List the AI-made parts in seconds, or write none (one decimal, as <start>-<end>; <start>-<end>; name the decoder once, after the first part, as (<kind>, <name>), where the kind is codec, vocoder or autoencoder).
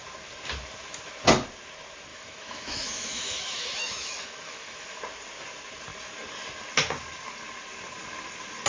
2.1-5.0 (autoencoder, DAC-VAE)